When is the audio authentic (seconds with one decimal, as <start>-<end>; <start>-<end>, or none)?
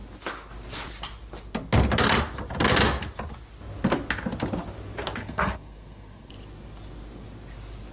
0.0-5.2; 6.3-7.9